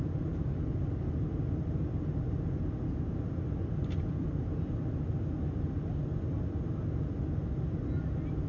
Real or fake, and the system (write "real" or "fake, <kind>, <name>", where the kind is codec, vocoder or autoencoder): real